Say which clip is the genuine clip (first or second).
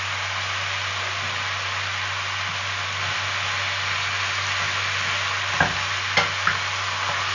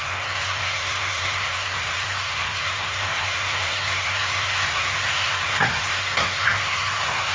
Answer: first